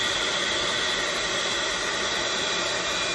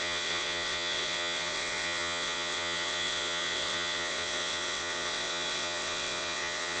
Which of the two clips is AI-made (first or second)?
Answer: second